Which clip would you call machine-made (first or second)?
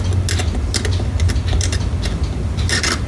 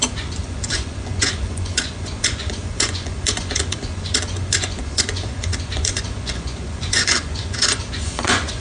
second